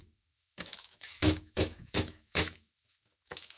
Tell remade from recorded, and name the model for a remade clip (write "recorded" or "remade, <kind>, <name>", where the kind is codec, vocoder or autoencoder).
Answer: remade, autoencoder, DAC-VAE